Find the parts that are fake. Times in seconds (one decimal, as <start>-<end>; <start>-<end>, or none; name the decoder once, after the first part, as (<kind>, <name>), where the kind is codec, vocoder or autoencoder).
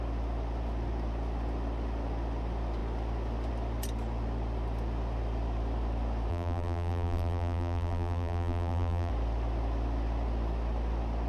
6.3-9.1 (vocoder, BigVGAN v2)